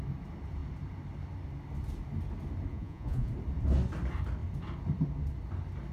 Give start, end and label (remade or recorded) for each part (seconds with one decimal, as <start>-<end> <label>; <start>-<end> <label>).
0.0-2.7 recorded; 2.7-3.3 remade; 3.3-5.9 recorded